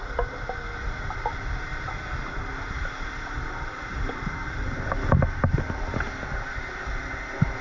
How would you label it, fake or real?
real